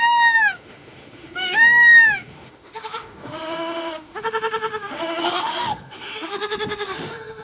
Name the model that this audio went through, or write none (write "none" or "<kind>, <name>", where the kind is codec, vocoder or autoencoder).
autoencoder, DAC-VAE